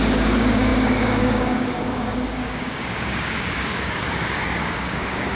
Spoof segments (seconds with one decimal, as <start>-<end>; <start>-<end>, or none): 0.0-5.4